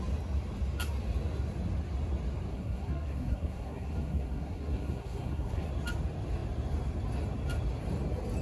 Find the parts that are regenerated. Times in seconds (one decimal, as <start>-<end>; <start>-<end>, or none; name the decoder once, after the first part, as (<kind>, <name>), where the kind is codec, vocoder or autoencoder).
2.5-5.7 (codec, SNAC)